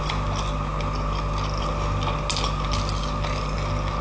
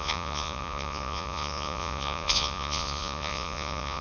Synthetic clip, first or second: second